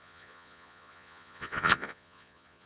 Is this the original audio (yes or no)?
no